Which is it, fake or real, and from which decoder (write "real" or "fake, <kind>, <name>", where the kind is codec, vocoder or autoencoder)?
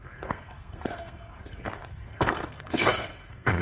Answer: fake, codec, SNAC